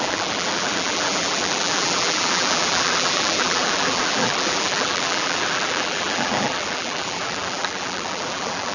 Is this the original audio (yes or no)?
no